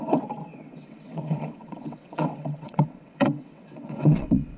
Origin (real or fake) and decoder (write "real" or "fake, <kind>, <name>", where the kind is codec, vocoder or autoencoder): fake, vocoder, WaveNeXt